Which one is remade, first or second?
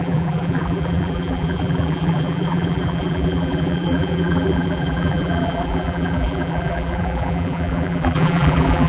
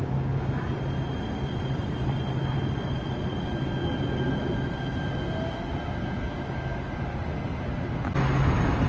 first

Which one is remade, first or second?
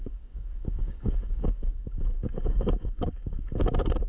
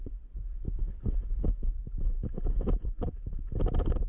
first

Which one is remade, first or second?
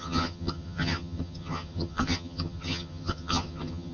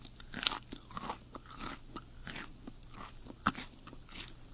first